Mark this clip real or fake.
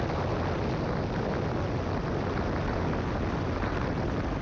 real